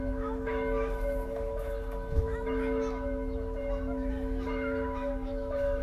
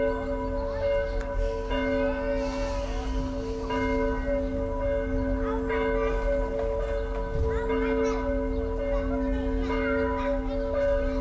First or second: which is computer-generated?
first